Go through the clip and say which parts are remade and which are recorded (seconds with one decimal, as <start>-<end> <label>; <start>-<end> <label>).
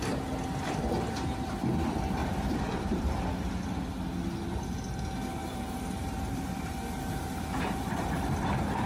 0.0-2.2 recorded; 2.2-3.0 remade; 3.0-5.4 recorded; 5.4-8.9 remade